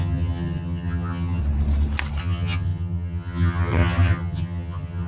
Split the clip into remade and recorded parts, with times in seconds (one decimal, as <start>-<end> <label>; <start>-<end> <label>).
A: 0.0-1.4 remade; 1.4-2.2 recorded; 2.2-5.1 remade

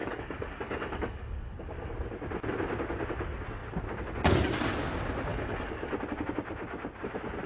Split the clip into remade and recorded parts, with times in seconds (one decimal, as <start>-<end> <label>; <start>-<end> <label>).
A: 0.0-1.9 remade; 1.9-5.3 recorded; 5.3-5.9 remade; 5.9-7.5 recorded

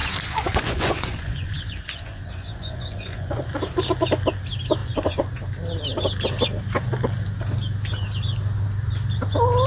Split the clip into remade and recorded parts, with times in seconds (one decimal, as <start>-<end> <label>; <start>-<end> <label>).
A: 0.0-3.5 remade; 3.5-4.8 recorded; 4.8-5.3 remade; 5.3-9.7 recorded

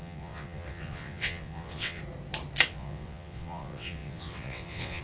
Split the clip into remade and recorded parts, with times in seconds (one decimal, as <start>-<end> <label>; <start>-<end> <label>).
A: 0.0-2.0 remade; 2.0-2.7 recorded; 2.7-5.0 remade

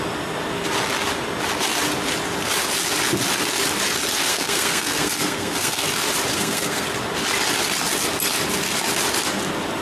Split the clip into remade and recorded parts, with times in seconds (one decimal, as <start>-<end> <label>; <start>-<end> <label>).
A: 0.0-4.3 recorded; 4.3-5.8 remade; 5.8-6.3 recorded; 6.3-6.9 remade; 6.9-9.8 recorded